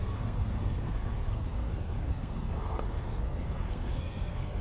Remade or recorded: remade